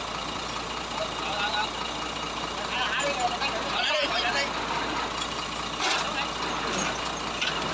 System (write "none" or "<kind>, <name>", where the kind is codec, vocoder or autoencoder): none